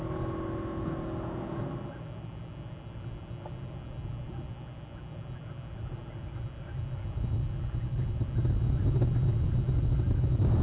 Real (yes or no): yes